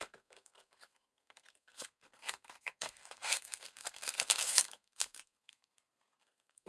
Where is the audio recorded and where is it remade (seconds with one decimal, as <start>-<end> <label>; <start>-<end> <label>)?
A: 0.0-6.7 remade